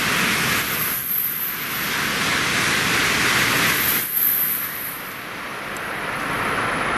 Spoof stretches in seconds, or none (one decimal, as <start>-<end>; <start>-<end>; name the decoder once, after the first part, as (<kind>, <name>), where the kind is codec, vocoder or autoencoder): 1.0-1.7 (vocoder, BigVGAN v2)